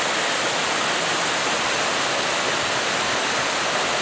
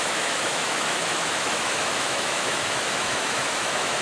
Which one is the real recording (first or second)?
first